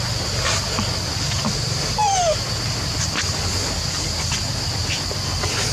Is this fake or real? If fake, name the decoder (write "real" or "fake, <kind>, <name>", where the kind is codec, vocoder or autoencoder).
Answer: real